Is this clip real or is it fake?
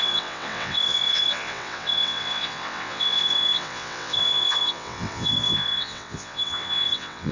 fake